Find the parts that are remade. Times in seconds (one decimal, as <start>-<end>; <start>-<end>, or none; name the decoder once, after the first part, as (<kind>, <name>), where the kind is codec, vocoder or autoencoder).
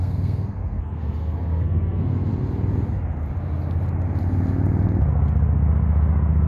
0.0-2.3 (codec, SNAC)